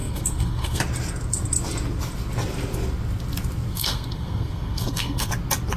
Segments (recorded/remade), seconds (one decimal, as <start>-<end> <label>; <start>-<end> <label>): 0.0-0.8 remade; 0.8-3.7 recorded; 3.7-5.3 remade; 5.3-5.8 recorded